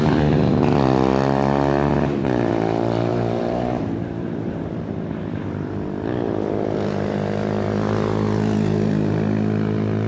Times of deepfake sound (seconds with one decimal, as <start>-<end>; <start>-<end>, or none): 3.1-5.7